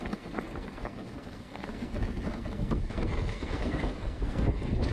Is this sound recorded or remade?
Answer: remade